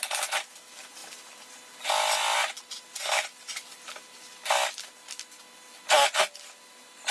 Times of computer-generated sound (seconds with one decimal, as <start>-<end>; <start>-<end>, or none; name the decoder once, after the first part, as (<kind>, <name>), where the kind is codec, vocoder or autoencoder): none